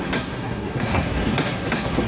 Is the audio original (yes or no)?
no